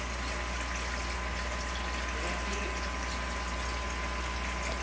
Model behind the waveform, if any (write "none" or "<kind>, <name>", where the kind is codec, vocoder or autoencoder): none